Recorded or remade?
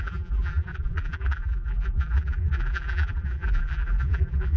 remade